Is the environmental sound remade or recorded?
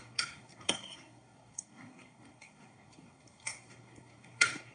remade